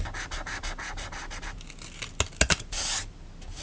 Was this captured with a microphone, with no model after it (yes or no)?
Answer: yes